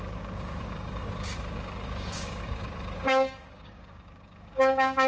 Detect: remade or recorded remade